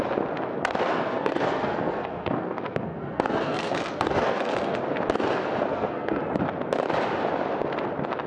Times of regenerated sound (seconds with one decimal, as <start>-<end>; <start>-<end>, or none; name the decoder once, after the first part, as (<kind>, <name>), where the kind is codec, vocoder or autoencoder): 0.5-4.8 (codec, SNAC); 5.7-6.2